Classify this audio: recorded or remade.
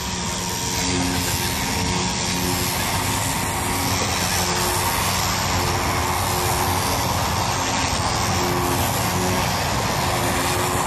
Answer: recorded